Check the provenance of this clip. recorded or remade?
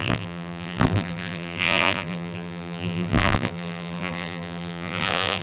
remade